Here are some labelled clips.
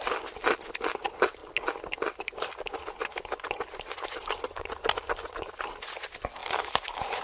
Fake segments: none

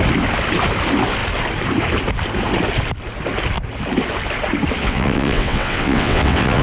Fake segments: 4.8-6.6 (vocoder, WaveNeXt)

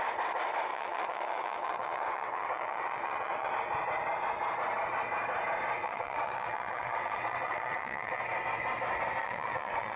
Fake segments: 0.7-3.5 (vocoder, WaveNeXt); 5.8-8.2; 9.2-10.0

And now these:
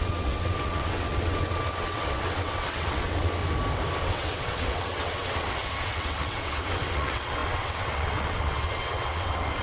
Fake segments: 0.0-3.4 (vocoder, WaveNeXt); 4.0-9.6

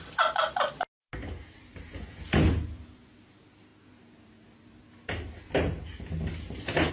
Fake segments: none

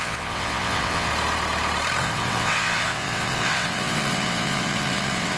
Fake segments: 0.0-1.1 (vocoder, WaveNeXt); 2.0-5.4

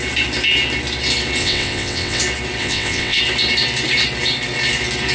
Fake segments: 1.4-2.2 (vocoder, WaveNeXt); 2.6-3.2

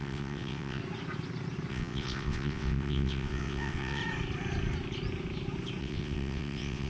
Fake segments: 0.0-0.8 (vocoder, WaveNeXt); 1.7-4.0; 5.8-6.9